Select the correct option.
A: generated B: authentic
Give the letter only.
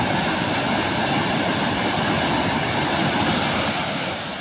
B